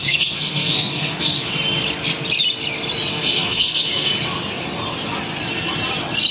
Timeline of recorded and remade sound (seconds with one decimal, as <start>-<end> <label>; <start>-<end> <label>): 0.0-1.5 remade; 1.5-3.1 recorded; 3.1-4.1 remade; 4.1-6.3 recorded